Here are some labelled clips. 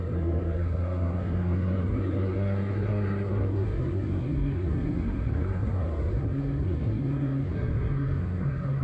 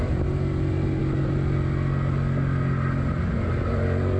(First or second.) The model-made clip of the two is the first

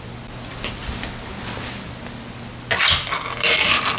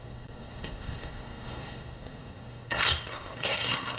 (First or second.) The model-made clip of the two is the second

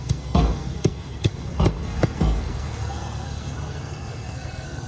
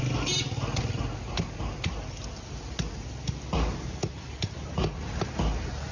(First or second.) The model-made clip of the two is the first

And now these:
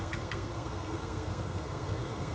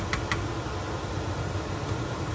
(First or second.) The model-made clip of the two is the first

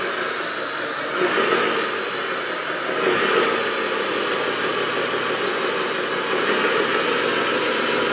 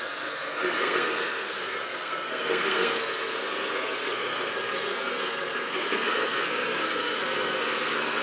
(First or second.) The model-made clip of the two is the second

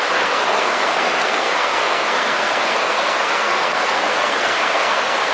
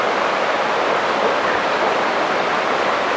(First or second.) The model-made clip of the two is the first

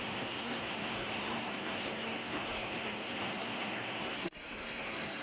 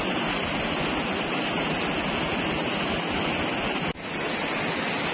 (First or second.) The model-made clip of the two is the first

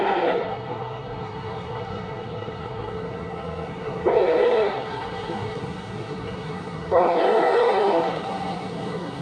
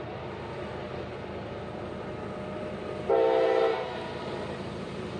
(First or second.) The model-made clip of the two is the first